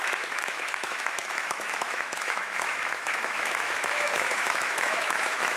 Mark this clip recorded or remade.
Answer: remade